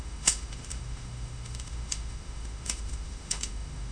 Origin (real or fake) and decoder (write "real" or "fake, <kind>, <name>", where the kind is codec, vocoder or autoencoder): fake, autoencoder, DAC-VAE